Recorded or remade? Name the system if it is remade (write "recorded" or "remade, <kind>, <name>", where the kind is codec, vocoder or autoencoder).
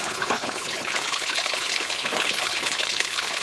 remade, codec, HILCodec